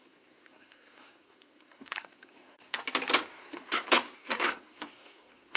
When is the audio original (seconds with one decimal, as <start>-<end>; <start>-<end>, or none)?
2.8-3.4

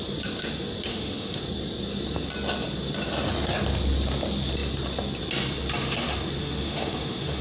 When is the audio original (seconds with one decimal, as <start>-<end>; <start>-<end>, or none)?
0.0-0.9; 1.4-6.4

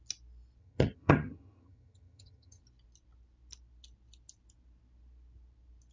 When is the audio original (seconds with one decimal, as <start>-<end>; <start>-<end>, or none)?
0.0-0.6; 2.6-5.9